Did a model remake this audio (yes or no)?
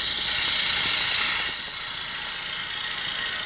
no